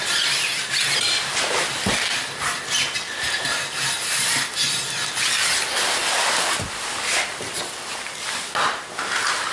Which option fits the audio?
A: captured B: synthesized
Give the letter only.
A